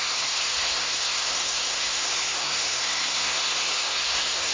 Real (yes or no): no